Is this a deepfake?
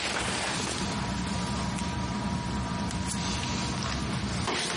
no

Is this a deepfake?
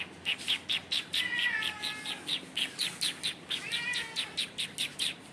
no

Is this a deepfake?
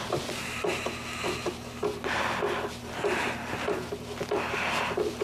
no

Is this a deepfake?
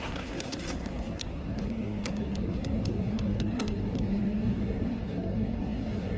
yes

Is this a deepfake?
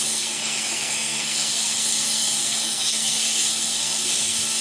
yes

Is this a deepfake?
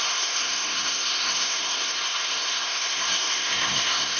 yes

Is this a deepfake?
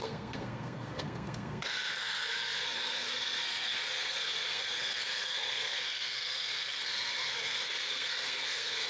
yes